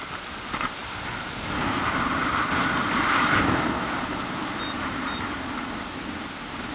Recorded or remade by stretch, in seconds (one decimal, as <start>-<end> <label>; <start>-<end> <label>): 0.0-6.7 recorded

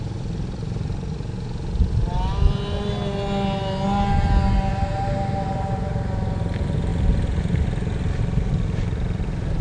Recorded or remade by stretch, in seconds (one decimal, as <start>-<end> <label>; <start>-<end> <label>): 0.0-4.7 recorded; 4.7-6.1 remade; 6.1-9.6 recorded

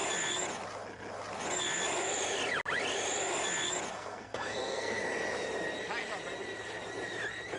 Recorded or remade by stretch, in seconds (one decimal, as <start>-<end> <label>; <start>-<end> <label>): 0.0-3.9 recorded; 3.9-5.0 remade; 5.0-7.6 recorded

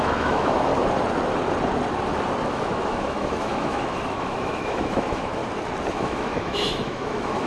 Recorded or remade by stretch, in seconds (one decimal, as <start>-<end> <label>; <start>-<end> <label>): 0.0-0.7 remade; 0.7-2.5 recorded; 2.5-5.4 remade; 5.4-5.9 recorded; 5.9-7.5 remade

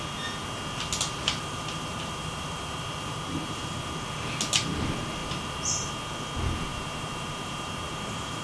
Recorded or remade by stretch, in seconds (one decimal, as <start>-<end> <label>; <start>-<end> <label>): 0.0-1.2 recorded; 1.2-3.6 remade; 3.6-5.2 recorded; 5.2-5.9 remade; 5.9-6.7 recorded; 6.7-8.4 remade

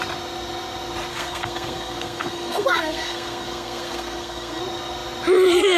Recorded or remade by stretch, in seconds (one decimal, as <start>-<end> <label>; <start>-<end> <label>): 0.0-1.1 recorded; 1.1-4.6 remade; 4.6-5.8 recorded

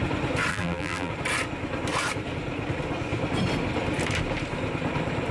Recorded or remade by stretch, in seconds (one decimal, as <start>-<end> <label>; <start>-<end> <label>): 0.0-0.5 recorded; 0.5-1.1 remade; 1.1-5.3 recorded